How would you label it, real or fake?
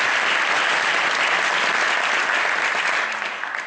real